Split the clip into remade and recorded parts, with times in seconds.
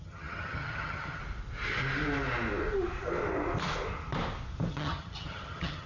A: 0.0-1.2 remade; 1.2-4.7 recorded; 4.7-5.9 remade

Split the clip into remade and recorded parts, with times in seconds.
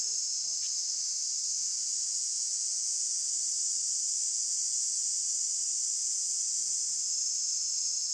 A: 0.0-1.6 recorded; 1.6-3.3 remade; 3.3-4.3 recorded; 4.3-5.1 remade; 5.1-6.0 recorded; 6.0-6.7 remade; 6.7-8.1 recorded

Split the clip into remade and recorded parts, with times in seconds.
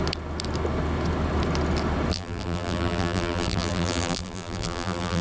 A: 0.0-2.1 recorded; 2.1-5.2 remade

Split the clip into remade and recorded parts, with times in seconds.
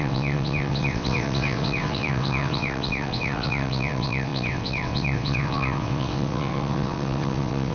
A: 0.0-7.7 remade